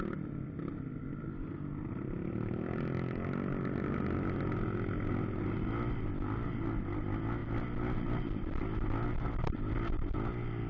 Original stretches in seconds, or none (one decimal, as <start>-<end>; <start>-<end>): 0.0-10.7